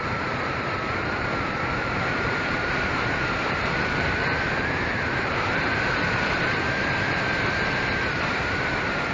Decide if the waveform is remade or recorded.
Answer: remade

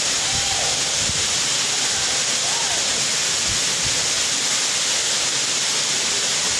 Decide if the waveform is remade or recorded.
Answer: recorded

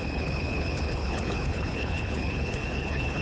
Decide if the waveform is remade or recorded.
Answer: remade